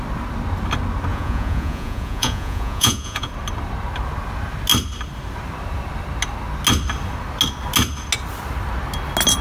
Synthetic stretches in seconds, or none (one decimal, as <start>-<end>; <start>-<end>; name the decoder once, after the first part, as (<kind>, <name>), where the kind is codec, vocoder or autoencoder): 1.1-3.3 (vocoder, Vocos)